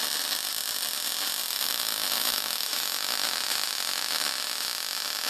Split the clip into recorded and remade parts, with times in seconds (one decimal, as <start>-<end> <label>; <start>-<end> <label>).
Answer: 0.0-1.5 recorded; 1.5-4.3 remade; 4.3-5.3 recorded

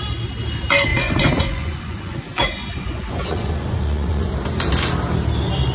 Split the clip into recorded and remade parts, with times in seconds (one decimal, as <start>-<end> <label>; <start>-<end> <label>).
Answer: 0.0-0.9 recorded; 0.9-4.3 remade; 4.3-5.7 recorded

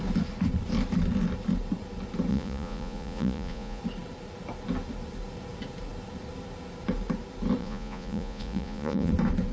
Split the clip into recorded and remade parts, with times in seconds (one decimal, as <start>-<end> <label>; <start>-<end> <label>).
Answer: 0.0-2.3 recorded; 2.3-3.8 remade; 3.8-7.6 recorded; 7.6-9.1 remade; 9.1-9.5 recorded